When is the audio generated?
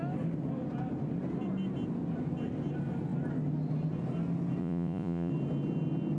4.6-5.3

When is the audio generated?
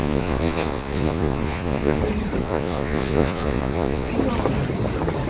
0.0-2.0; 2.4-4.1